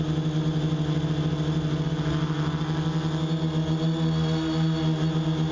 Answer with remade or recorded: recorded